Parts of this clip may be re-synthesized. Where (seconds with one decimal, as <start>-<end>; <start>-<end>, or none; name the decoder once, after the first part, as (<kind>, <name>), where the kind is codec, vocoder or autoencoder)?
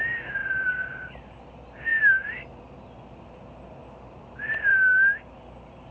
none